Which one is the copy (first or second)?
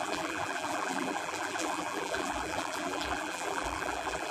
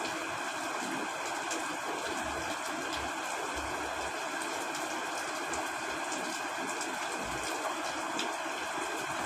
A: first